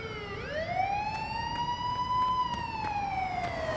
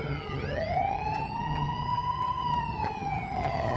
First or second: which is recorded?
first